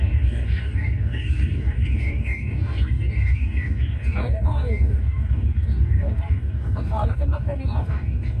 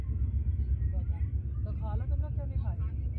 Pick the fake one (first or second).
first